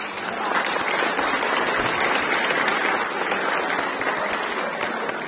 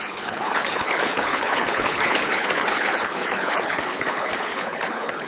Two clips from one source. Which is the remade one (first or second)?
second